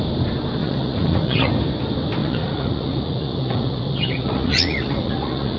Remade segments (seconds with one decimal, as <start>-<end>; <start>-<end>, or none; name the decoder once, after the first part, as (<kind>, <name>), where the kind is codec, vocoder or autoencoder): 0.6-1.5 (vocoder, Vocos); 2.2-5.6